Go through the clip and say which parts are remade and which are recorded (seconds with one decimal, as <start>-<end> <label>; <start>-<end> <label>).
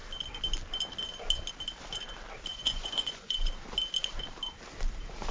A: 0.0-2.5 recorded; 2.5-3.5 remade; 3.5-5.3 recorded